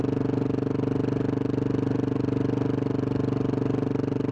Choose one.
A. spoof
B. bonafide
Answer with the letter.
B